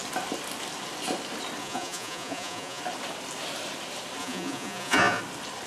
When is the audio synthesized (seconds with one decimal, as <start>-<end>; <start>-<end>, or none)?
1.6-2.8; 4.2-5.2